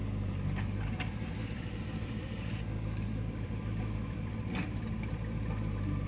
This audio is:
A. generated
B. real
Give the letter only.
B